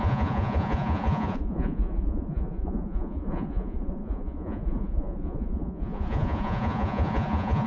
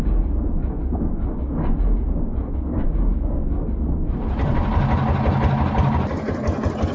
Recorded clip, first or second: second